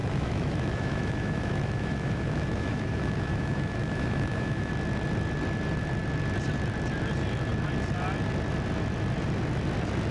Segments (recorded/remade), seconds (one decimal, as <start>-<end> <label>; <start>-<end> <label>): 0.0-4.7 remade; 4.7-10.1 recorded